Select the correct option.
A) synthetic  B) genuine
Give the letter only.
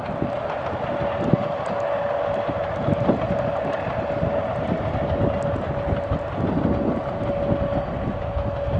B